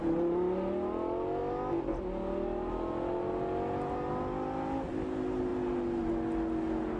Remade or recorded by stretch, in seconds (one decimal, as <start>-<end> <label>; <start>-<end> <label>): 0.0-7.0 recorded